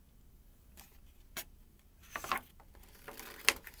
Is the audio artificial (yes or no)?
no